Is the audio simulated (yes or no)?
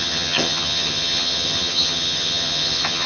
yes